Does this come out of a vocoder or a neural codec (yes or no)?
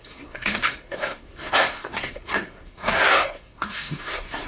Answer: yes